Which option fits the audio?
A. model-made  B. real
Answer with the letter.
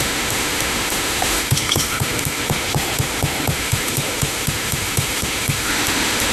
A